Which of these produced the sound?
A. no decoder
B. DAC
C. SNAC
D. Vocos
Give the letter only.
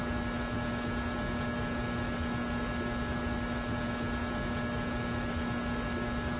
A